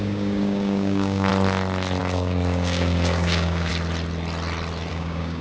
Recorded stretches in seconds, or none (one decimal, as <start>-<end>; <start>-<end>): 1.3-2.0; 3.7-4.9